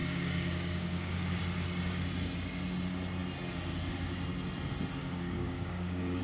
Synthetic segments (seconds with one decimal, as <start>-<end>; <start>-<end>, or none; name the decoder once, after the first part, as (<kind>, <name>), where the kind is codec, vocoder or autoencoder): 0.0-1.4 (codec, DAC); 5.0-6.2